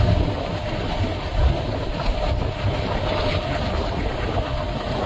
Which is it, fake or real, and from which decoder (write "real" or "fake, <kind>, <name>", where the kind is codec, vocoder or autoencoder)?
real